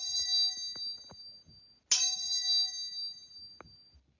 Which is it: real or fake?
real